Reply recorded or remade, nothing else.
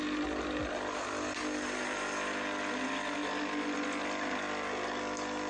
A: recorded